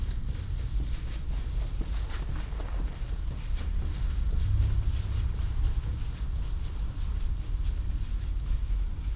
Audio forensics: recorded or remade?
recorded